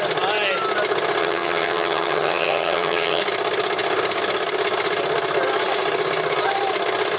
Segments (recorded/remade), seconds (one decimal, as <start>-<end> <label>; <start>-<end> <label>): 0.0-1.2 recorded; 1.2-3.2 remade; 3.2-7.2 recorded